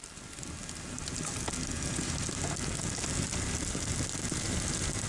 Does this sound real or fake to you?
real